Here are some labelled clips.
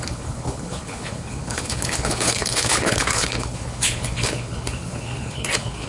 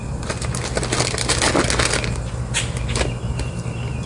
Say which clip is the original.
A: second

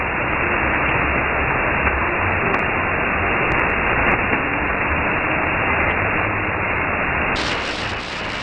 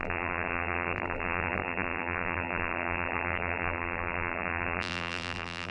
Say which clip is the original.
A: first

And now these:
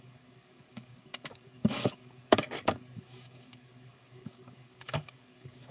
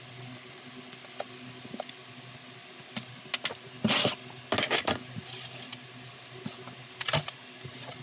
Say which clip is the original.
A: second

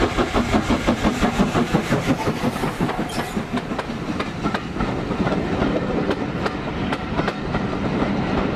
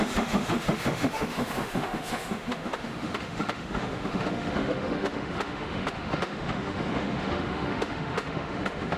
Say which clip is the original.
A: first